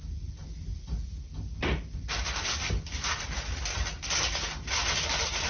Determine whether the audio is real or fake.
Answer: real